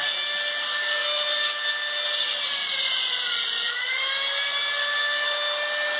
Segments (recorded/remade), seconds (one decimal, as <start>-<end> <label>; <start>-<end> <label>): 0.0-2.6 recorded; 2.6-4.0 remade; 4.0-6.0 recorded